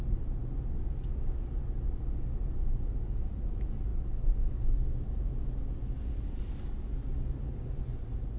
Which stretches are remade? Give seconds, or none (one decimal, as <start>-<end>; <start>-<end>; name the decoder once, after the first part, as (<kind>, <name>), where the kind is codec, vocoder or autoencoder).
none